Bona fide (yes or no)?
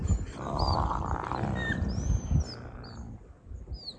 yes